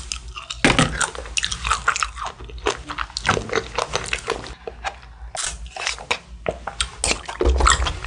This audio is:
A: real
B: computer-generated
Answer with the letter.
A